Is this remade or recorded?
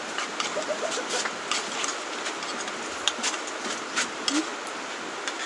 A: recorded